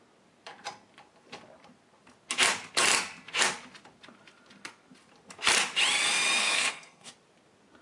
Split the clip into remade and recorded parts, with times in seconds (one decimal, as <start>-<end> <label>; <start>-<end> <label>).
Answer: 0.0-6.4 recorded; 6.4-7.1 remade; 7.1-7.8 recorded